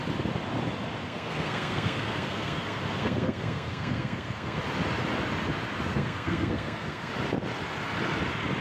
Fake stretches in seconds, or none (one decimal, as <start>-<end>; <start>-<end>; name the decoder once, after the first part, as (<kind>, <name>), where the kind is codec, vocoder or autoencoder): 1.0-4.6 (codec, SNAC); 5.9-7.1